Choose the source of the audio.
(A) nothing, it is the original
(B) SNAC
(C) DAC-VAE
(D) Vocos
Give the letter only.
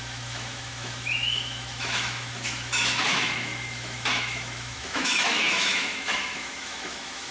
C